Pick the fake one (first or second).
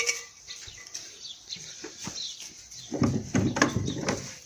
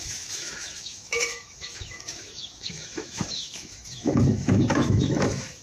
second